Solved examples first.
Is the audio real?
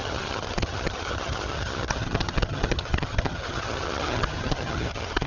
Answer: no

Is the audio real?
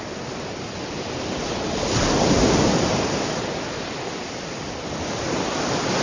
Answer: yes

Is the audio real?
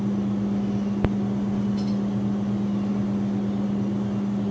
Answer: yes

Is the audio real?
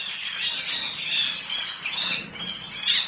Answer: yes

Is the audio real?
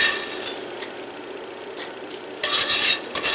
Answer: yes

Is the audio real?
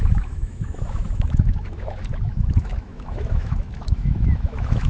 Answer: no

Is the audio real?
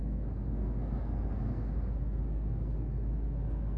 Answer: no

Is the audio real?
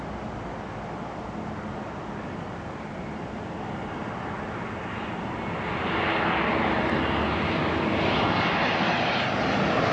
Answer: yes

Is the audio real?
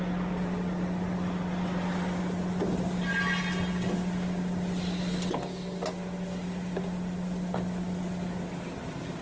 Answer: yes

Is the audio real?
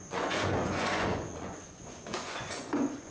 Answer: no